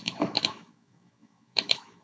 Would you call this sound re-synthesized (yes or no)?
yes